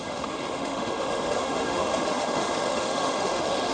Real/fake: fake